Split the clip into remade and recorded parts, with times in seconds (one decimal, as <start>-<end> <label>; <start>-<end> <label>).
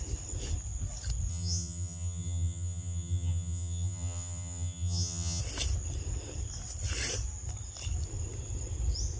0.0-1.3 recorded; 1.3-5.4 remade; 5.4-9.2 recorded